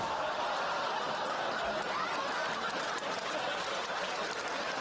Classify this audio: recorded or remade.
recorded